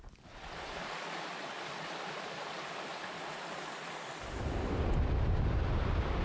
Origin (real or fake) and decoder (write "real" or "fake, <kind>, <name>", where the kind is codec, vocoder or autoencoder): real